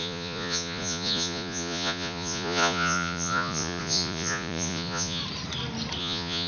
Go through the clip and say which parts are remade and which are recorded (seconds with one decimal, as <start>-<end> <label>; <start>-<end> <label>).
0.0-5.2 remade; 5.2-6.0 recorded; 6.0-6.5 remade